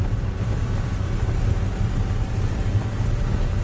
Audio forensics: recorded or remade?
recorded